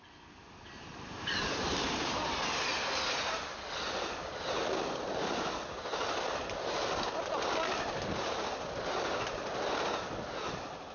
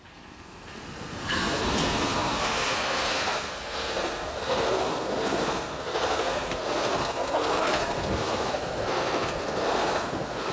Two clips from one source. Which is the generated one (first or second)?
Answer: second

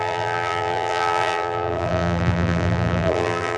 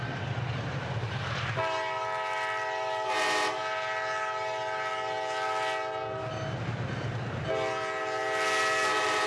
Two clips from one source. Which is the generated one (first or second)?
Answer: first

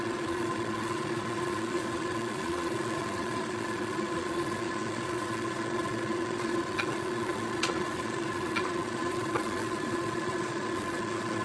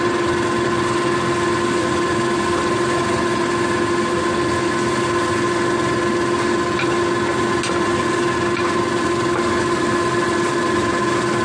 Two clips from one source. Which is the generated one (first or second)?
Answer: first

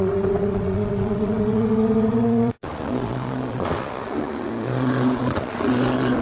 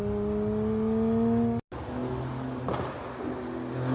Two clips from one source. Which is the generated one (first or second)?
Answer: first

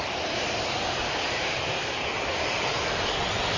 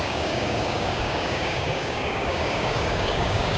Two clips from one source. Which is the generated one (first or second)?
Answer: second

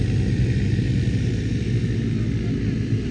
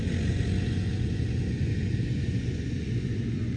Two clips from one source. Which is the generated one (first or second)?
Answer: second